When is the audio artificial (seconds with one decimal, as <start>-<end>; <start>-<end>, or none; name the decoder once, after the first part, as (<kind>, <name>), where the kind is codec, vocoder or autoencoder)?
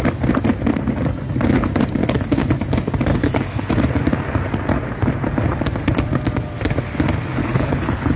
2.0-2.5 (codec, HILCodec); 3.1-3.7; 7.4-8.2